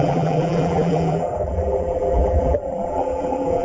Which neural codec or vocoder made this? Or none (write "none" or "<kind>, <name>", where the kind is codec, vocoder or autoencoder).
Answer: vocoder, BigVGAN v2